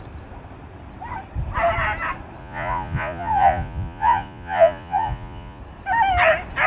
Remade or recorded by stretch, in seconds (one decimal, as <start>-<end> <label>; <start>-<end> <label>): 0.0-2.4 recorded; 2.4-5.6 remade; 5.6-6.7 recorded